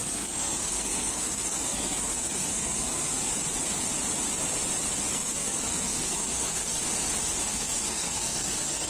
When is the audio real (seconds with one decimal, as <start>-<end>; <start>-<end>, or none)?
3.3-5.1; 6.8-7.5

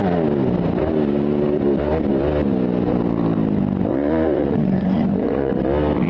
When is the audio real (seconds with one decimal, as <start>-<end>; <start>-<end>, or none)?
0.0-3.9; 5.5-6.1

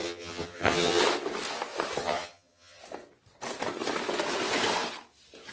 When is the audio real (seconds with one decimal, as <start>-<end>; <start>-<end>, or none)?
1.0-2.0; 2.8-5.5

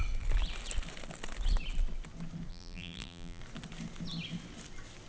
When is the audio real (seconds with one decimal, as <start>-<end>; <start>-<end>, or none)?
0.0-2.5; 3.4-5.1